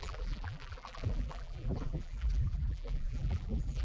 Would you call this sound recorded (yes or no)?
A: no